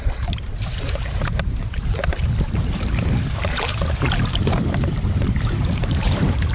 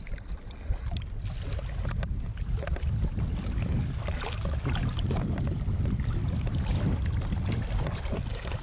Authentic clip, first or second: second